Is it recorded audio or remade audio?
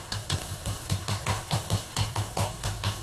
remade